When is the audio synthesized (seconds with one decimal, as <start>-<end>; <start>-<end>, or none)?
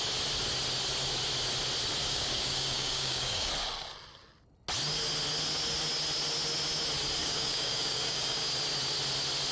2.0-3.5; 7.2-8.4